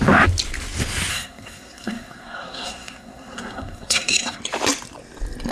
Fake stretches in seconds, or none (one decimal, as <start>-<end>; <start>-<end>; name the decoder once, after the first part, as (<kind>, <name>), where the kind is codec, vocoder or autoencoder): 1.1-4.4 (codec, SNAC)